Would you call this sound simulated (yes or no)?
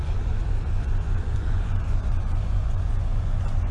yes